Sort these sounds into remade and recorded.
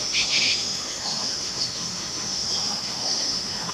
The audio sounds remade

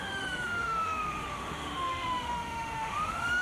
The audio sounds remade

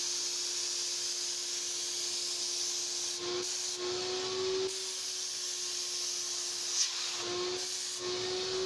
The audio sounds recorded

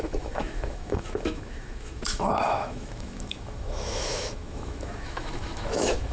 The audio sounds remade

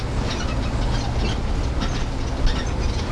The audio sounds recorded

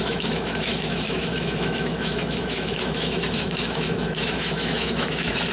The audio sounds remade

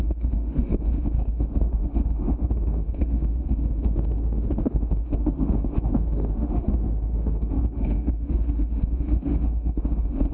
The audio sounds remade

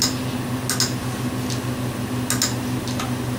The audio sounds recorded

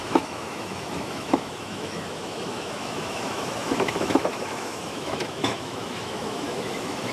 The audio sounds remade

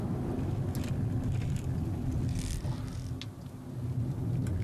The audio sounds recorded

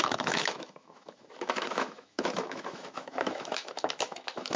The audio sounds remade